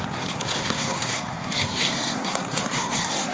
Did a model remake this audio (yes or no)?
yes